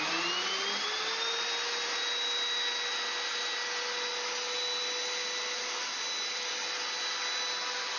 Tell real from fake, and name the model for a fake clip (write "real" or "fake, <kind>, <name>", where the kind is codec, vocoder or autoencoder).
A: real